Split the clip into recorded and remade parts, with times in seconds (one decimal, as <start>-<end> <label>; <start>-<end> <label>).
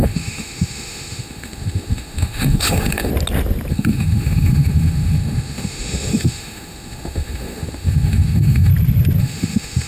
0.0-3.1 remade; 3.1-3.7 recorded; 3.7-8.7 remade; 8.7-9.2 recorded; 9.2-9.9 remade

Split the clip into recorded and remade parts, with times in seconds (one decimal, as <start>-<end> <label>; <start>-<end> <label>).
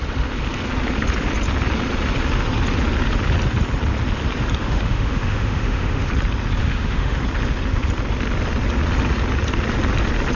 0.0-4.6 recorded; 4.6-6.1 remade; 6.1-6.6 recorded; 6.6-7.2 remade; 7.2-10.3 recorded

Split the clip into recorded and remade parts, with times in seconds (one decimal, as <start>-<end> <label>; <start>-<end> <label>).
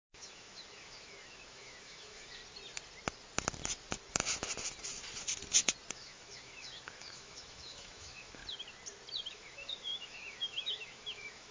0.0-2.4 remade; 2.4-5.9 recorded; 5.9-8.4 remade; 8.4-9.3 recorded; 9.3-11.5 remade